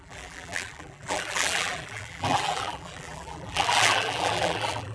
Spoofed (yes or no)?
yes